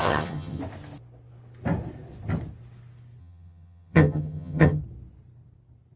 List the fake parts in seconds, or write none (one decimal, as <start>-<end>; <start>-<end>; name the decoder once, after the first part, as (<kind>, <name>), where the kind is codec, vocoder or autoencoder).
0.0-0.6 (vocoder, HiFi-GAN); 3.2-4.8